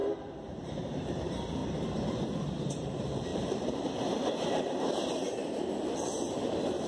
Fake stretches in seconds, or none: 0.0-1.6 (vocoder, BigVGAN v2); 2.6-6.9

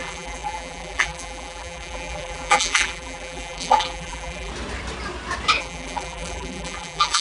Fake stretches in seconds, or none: 0.0-4.5 (vocoder, BigVGAN v2); 5.6-7.2

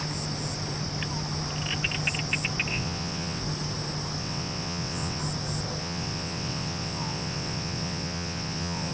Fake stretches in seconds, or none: 2.7-3.4 (vocoder, WaveNeXt); 4.2-5.2; 5.8-8.9

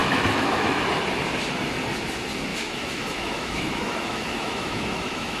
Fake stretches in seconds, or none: 0.0-0.8 (autoencoder, DAC-VAE); 2.5-5.4

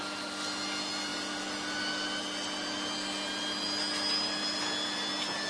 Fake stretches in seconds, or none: none